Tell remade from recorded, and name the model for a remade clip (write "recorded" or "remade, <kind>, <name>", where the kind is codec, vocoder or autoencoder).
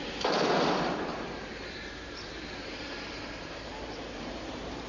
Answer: remade, vocoder, BigVGAN v2